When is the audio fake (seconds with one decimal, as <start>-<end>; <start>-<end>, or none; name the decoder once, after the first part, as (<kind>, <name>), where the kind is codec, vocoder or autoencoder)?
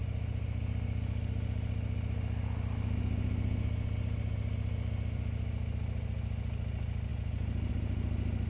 none